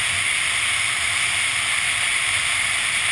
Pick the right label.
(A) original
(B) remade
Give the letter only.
A